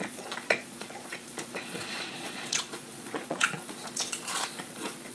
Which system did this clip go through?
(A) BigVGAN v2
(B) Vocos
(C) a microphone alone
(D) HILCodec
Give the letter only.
B